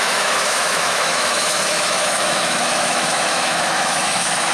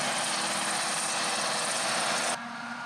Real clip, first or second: second